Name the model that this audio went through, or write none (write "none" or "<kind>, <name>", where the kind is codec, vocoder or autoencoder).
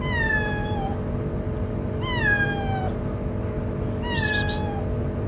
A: none